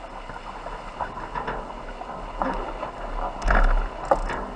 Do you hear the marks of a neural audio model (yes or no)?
no